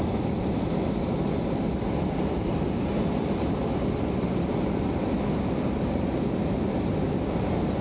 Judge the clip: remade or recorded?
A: recorded